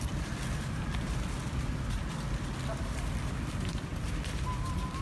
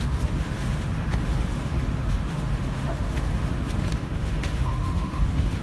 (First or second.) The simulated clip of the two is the second